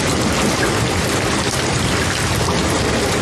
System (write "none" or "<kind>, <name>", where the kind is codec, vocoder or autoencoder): none